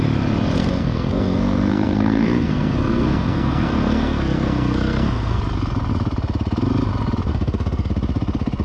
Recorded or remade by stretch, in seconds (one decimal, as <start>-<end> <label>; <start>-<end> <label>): 0.0-0.6 recorded; 0.6-5.4 remade; 5.4-7.3 recorded; 7.3-7.9 remade; 7.9-8.6 recorded